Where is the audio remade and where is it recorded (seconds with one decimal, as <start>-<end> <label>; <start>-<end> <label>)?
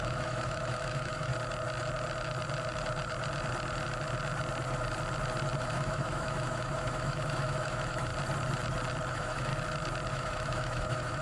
0.0-1.3 remade; 1.3-5.6 recorded; 5.6-8.1 remade; 8.1-9.1 recorded; 9.1-9.5 remade; 9.5-10.1 recorded; 10.1-11.2 remade